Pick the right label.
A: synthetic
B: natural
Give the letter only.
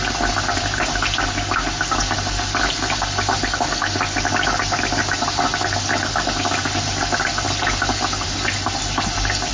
B